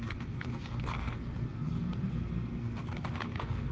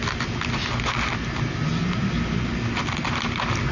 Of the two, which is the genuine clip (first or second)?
second